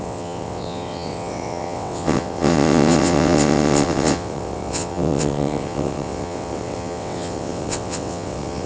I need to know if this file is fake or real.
fake